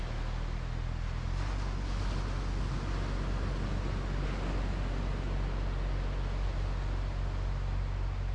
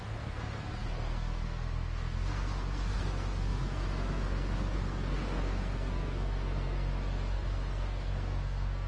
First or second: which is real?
first